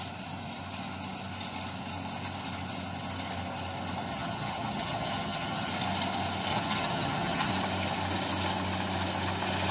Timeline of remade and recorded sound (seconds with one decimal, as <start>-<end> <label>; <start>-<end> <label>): 0.0-4.1 recorded; 4.1-5.7 remade; 5.7-6.5 recorded; 6.5-7.5 remade; 7.5-9.7 recorded